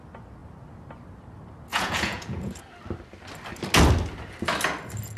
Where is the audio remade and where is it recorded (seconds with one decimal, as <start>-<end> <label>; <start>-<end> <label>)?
0.0-1.7 recorded; 1.7-2.5 remade; 2.5-5.2 recorded

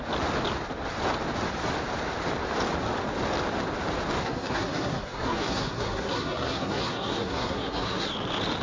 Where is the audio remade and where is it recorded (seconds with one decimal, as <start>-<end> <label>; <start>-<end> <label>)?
0.0-4.2 recorded; 4.2-8.1 remade; 8.1-8.6 recorded

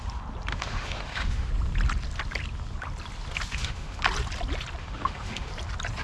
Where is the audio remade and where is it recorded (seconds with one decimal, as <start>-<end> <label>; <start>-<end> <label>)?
0.0-0.5 recorded; 0.5-1.5 remade; 1.5-3.5 recorded; 3.5-4.0 remade; 4.0-4.8 recorded; 4.8-5.5 remade; 5.5-6.0 recorded

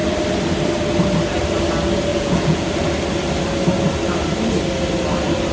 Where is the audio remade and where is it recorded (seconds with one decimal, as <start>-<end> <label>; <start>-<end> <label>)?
0.0-2.1 recorded; 2.1-2.7 remade; 2.7-5.5 recorded

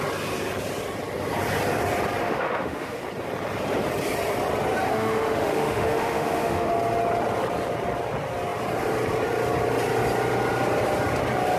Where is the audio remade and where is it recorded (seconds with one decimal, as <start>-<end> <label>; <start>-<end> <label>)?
0.0-2.2 recorded; 2.2-3.0 remade; 3.0-4.9 recorded; 4.9-6.7 remade; 6.7-11.6 recorded

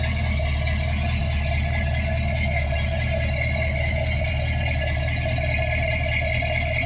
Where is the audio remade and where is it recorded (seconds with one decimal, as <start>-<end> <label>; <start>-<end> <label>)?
0.0-6.9 recorded

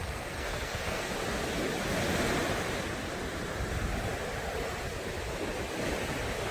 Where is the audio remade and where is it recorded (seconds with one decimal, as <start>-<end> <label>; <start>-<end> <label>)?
0.0-1.1 remade; 1.1-6.5 recorded

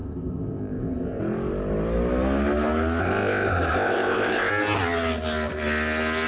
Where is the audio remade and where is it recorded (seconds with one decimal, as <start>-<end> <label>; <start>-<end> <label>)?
0.0-1.2 remade; 1.2-3.0 recorded; 3.0-4.5 remade; 4.5-6.3 recorded